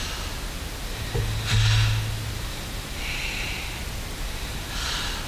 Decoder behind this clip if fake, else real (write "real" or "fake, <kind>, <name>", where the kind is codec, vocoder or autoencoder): real